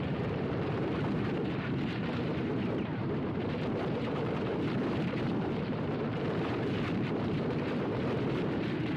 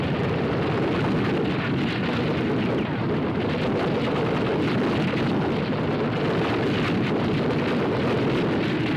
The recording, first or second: second